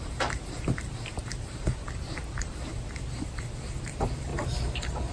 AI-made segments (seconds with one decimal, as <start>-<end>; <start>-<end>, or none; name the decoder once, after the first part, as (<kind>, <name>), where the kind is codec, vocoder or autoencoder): 1.2-2.5 (vocoder, BigVGAN v2); 4.3-5.1